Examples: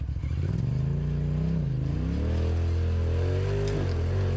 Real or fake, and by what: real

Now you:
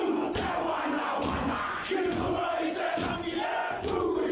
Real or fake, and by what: fake, vocoder, Vocos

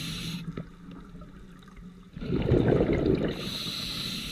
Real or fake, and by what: real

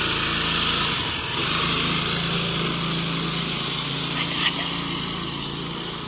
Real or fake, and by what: real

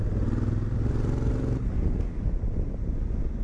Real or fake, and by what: real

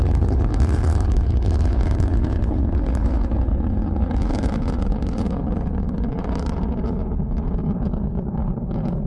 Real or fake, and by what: fake, codec, HILCodec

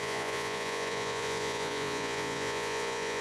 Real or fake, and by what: fake, vocoder, Vocos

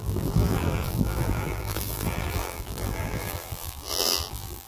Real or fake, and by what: fake, vocoder, BigVGAN v2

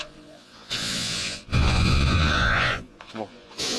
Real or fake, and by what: fake, vocoder, Vocos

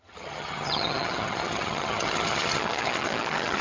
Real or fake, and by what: fake, vocoder, HiFi-GAN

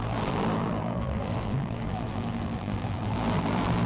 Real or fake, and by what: fake, vocoder, BigVGAN v2